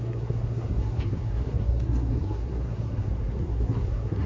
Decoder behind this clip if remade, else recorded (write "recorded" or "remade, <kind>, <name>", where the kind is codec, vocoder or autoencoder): remade, codec, SNAC